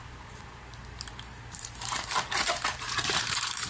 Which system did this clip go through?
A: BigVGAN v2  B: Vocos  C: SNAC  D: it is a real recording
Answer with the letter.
A